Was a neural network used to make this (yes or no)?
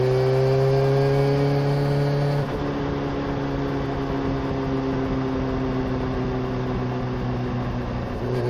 no